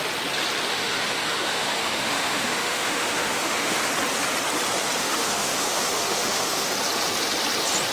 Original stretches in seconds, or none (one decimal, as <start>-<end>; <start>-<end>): 0.0-0.7; 3.9-5.0; 6.7-7.9